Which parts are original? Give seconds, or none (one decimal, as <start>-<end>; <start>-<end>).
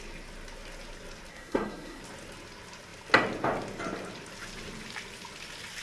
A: 0.0-1.3; 2.0-5.8